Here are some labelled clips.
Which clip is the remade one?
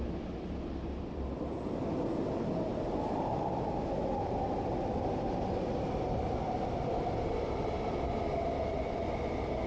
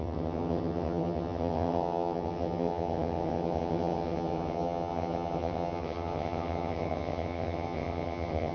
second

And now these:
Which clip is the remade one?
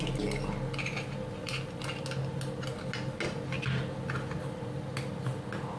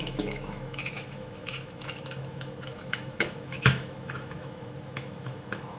second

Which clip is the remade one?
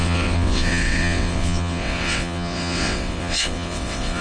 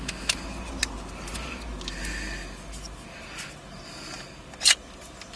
first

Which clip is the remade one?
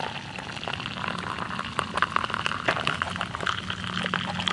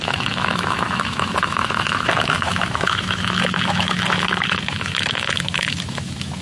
second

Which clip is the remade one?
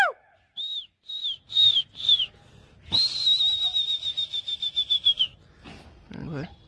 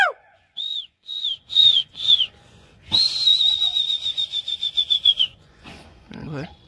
second